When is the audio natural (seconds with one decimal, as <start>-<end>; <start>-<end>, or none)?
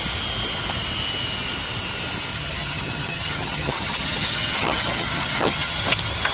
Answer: 0.0-2.3; 5.8-6.3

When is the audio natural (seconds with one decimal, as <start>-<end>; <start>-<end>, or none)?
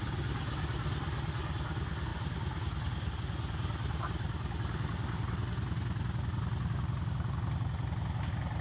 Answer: 0.0-8.6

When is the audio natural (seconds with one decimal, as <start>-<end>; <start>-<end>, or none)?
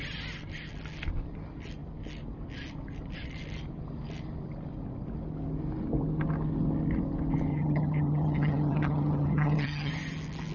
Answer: 0.0-7.5; 9.9-10.5